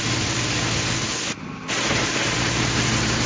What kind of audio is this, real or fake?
real